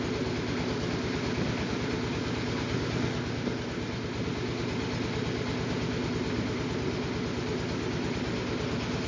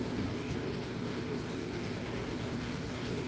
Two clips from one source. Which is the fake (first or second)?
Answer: second